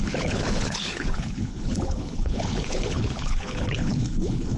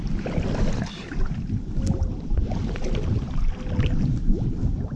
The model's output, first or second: first